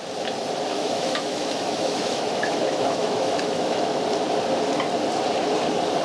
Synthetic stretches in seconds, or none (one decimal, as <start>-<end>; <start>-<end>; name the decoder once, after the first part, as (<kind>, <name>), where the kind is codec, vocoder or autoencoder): 0.7-4.0 (autoencoder, DAC-VAE)